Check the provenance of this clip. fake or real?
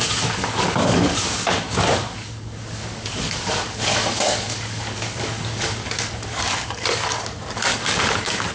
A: fake